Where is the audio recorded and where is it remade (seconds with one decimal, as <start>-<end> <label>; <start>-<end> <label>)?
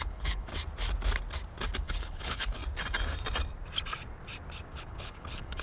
0.0-0.5 remade; 0.5-1.9 recorded; 1.9-2.6 remade; 2.6-4.7 recorded; 4.7-5.6 remade